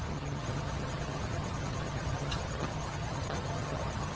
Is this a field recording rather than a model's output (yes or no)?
no